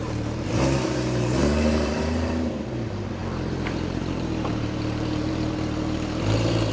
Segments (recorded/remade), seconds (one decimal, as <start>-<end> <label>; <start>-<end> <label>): 0.0-6.7 remade